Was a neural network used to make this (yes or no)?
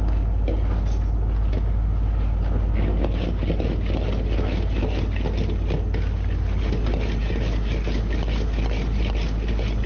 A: no